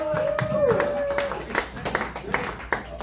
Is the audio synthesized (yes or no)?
no